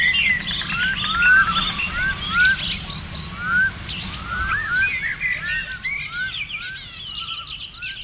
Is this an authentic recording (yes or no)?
yes